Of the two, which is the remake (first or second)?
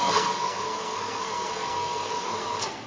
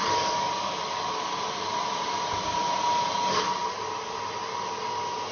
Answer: first